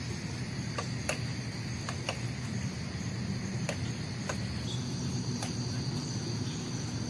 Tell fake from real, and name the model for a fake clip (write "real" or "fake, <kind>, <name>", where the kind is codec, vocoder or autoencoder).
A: real